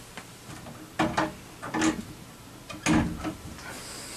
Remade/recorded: recorded